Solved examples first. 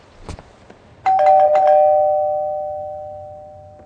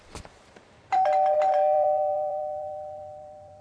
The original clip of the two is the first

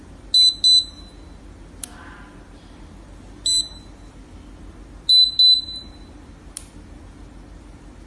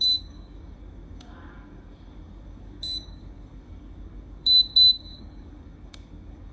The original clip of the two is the first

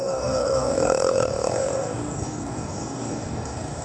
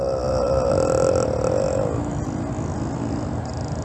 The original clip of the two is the second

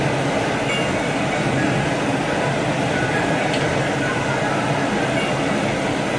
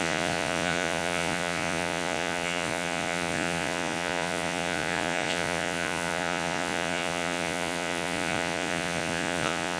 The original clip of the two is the first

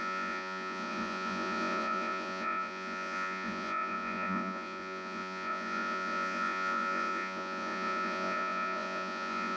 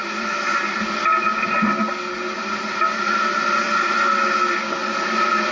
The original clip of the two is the second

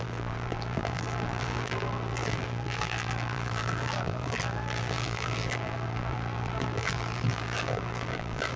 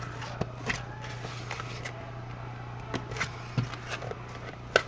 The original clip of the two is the second